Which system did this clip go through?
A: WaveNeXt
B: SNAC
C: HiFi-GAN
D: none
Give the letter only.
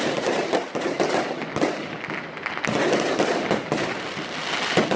D